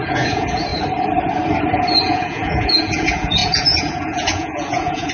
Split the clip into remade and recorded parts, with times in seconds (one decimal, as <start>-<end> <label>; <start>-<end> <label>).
0.0-0.7 remade; 0.7-2.0 recorded; 2.0-5.1 remade